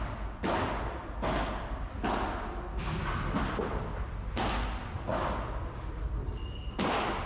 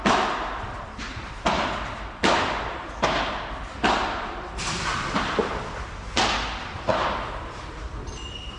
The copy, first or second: second